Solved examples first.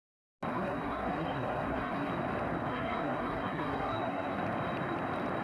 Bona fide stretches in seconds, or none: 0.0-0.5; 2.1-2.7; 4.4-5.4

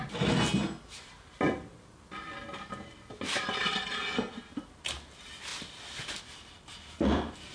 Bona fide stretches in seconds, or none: 0.0-7.5

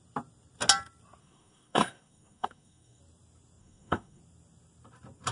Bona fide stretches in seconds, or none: 0.0-1.2; 3.0-3.6; 4.2-5.3